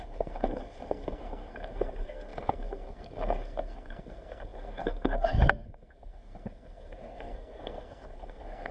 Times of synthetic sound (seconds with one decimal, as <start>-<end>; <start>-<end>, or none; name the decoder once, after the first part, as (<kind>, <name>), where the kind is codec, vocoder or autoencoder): 0.0-8.7 (codec, SNAC)